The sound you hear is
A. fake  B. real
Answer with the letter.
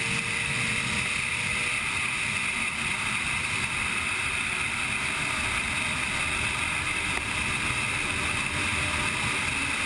B